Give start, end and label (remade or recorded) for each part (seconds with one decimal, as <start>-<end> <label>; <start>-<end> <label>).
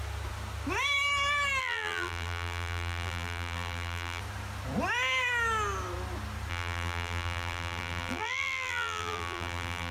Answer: 0.0-1.6 recorded; 1.6-4.2 remade; 4.2-6.5 recorded; 6.5-9.9 remade